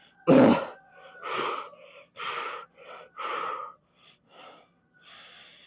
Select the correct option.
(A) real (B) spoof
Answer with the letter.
A